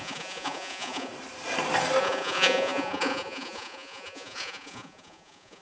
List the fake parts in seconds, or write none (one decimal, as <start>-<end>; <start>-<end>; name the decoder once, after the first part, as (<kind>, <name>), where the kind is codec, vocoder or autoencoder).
0.0-1.1 (vocoder, Vocos); 2.0-5.6